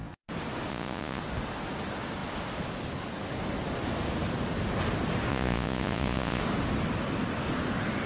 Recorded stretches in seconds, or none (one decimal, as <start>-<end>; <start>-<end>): 0.0-0.7; 1.2-5.3; 6.4-8.1